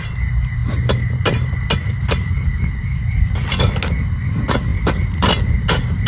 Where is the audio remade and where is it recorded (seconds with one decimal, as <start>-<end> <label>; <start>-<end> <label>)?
0.0-4.7 recorded; 4.7-5.4 remade; 5.4-6.1 recorded